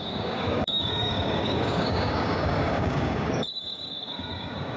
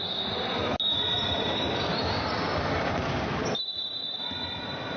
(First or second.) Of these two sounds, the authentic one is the second